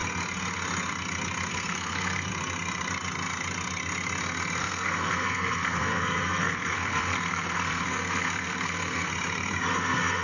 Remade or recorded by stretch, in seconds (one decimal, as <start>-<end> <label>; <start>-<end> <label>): 0.0-1.5 recorded; 1.5-2.3 remade; 2.3-4.6 recorded; 4.6-9.1 remade; 9.1-9.7 recorded; 9.7-10.2 remade